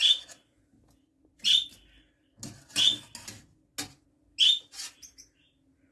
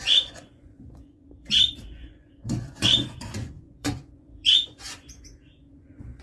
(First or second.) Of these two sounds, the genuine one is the first